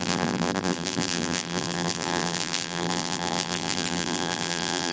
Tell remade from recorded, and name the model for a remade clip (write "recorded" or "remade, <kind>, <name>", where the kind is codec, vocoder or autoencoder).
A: remade, vocoder, BigVGAN v2